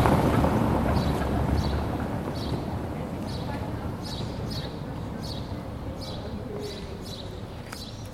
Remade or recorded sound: remade